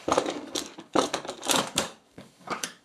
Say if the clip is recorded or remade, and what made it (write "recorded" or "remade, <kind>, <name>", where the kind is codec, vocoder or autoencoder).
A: remade, codec, DAC